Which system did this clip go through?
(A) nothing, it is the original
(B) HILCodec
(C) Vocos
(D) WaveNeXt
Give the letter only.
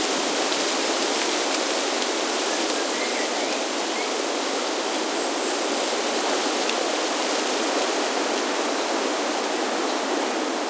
A